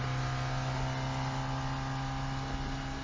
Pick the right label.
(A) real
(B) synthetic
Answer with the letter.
A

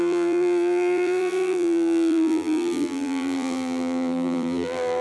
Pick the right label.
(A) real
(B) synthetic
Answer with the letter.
B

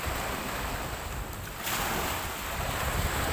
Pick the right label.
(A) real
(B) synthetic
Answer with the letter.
A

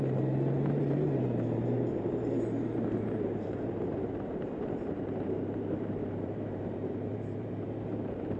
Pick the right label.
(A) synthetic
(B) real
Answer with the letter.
A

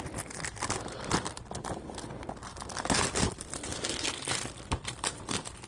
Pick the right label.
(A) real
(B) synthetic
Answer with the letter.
A